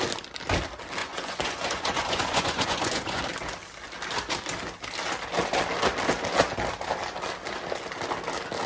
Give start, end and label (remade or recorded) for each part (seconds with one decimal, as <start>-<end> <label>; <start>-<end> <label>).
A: 0.0-1.0 recorded; 1.0-3.2 remade; 3.2-8.7 recorded